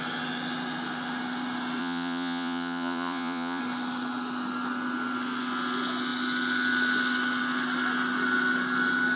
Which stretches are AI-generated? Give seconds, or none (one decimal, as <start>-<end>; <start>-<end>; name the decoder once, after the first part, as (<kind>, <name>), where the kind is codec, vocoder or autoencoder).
1.8-3.6 (vocoder, Vocos)